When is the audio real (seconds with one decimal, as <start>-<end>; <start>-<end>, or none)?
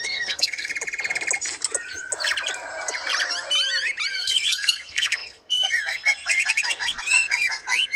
0.7-4.1